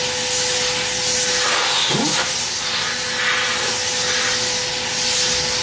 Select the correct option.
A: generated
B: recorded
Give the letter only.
B